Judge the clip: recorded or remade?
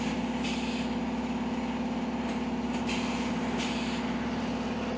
recorded